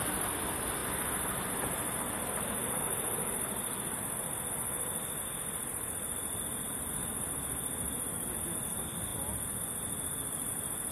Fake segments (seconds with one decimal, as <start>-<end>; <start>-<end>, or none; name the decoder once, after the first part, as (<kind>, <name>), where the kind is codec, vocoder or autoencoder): 6.5-7.1 (vocoder, BigVGAN v2)